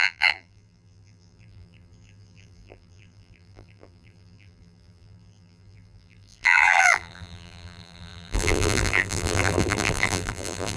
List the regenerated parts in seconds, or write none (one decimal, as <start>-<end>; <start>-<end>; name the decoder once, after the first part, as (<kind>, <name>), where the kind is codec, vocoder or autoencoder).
0.0-10.8 (vocoder, BigVGAN v2)